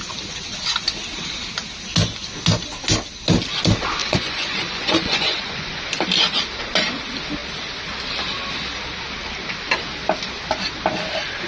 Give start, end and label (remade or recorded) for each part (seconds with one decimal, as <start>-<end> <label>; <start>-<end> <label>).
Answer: 0.0-4.0 recorded; 4.0-5.8 remade; 5.8-11.5 recorded